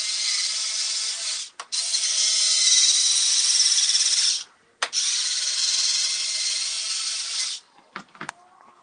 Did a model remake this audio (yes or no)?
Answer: no